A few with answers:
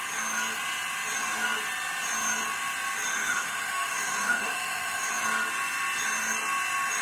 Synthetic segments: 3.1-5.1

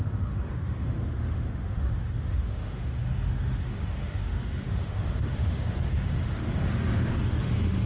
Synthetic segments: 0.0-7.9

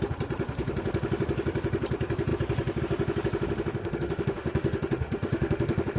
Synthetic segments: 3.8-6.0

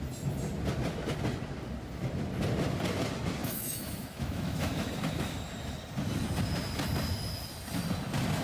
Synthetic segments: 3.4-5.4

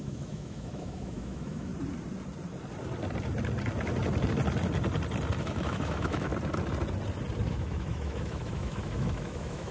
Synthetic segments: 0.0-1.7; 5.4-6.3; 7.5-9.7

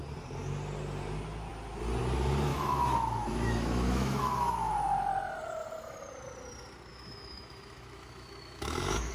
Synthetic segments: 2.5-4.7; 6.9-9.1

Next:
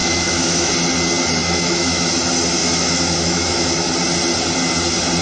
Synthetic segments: 0.0-0.7; 1.4-2.1; 2.6-3.9

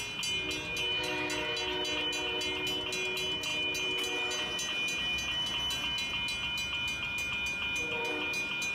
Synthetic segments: none